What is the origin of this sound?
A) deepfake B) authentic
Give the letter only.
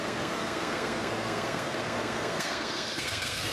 A